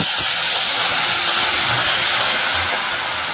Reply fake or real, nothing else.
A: real